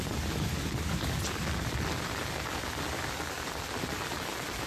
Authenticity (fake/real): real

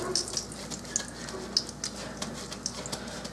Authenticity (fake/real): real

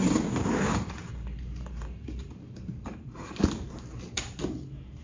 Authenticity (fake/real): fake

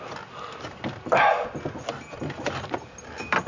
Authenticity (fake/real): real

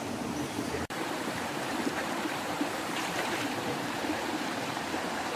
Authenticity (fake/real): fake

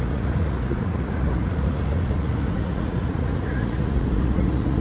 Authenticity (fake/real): fake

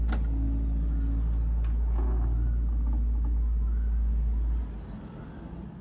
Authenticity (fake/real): real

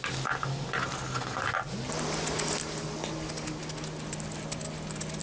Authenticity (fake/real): real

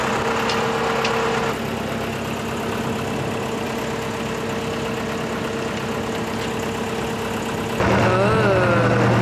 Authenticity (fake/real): real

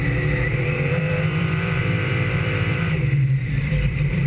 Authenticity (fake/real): fake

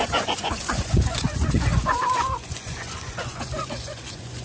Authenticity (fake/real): fake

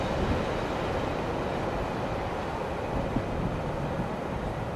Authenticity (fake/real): real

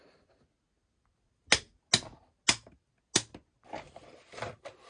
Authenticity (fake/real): real